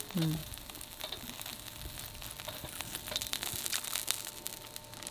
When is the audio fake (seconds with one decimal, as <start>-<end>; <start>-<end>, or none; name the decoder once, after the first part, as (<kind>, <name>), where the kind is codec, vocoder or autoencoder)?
none